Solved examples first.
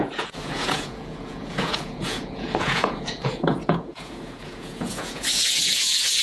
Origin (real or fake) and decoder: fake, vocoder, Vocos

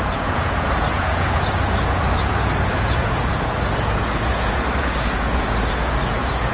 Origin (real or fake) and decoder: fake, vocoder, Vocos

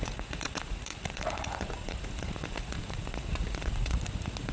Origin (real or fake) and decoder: fake, vocoder, Vocos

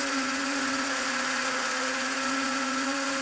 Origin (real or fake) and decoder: fake, vocoder, Vocos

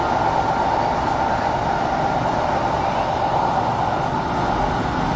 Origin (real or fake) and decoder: real